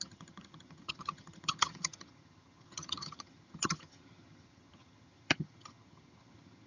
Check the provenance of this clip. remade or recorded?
remade